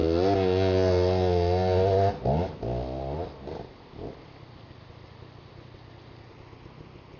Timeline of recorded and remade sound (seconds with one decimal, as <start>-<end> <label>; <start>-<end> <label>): 0.0-7.2 recorded